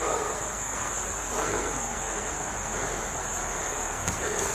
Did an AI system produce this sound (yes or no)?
yes